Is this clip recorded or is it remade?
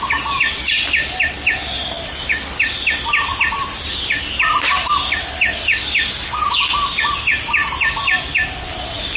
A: recorded